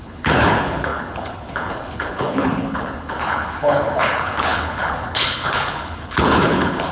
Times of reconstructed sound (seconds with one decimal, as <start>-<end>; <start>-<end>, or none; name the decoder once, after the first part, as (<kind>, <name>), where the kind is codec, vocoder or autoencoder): 0.0-6.9 (codec, HILCodec)